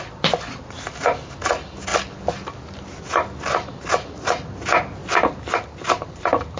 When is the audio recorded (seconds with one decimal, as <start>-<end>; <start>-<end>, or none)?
0.0-5.0